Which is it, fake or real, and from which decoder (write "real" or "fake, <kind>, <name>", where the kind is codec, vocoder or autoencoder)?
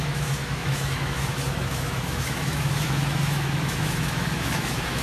fake, autoencoder, DAC-VAE